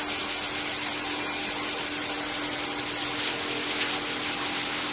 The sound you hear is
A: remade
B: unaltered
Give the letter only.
B